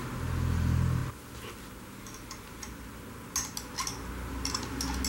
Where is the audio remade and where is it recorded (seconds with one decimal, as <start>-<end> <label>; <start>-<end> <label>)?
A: 0.0-5.1 recorded